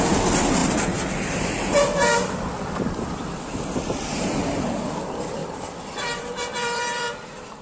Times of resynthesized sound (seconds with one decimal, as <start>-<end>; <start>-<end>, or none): 0.6-4.6; 5.4-7.6